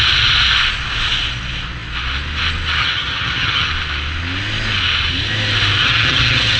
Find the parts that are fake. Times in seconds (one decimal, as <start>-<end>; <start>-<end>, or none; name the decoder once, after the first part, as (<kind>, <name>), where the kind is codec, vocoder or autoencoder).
2.8-3.7 (vocoder, HiFi-GAN); 5.8-6.6